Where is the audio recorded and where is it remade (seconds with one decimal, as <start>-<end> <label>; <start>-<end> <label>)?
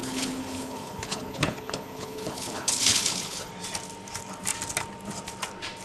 0.0-3.5 remade; 3.5-5.8 recorded